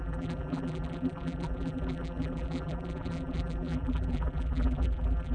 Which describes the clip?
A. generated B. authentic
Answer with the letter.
A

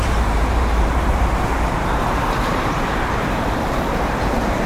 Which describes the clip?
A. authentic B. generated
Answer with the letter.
B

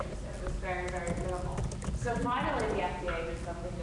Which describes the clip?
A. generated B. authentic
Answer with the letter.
B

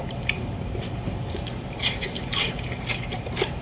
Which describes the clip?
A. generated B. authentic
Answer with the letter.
A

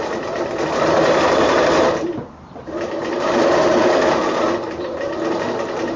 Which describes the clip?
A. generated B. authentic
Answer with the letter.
A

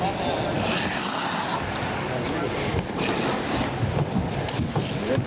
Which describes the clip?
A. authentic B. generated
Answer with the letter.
A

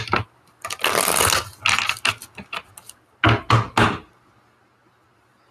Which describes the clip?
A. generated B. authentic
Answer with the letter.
B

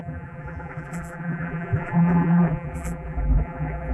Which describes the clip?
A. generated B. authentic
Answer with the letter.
A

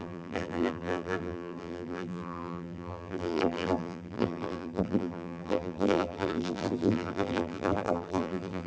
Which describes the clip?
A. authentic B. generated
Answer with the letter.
B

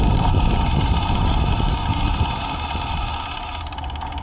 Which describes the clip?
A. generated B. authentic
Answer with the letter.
B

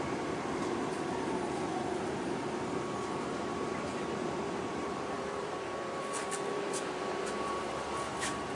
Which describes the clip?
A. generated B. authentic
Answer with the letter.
A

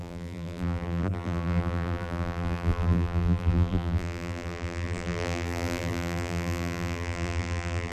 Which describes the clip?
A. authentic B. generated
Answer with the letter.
B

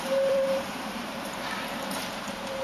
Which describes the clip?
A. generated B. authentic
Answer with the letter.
A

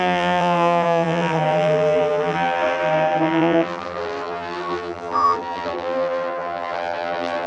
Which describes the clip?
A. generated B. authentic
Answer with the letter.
A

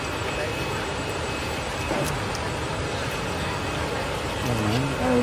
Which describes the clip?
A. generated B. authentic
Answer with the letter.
B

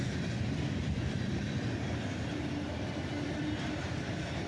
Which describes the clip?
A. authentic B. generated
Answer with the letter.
B